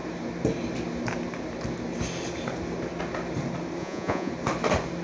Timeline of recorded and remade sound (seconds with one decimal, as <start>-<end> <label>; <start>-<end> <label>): 0.0-3.8 recorded; 3.8-4.3 remade; 4.3-5.0 recorded